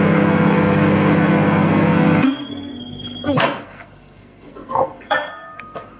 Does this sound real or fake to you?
fake